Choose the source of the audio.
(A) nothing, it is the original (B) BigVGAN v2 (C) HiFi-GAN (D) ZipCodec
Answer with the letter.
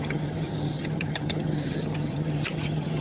C